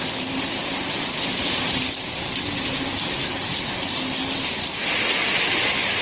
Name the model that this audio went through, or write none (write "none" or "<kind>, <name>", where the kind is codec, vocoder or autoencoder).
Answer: none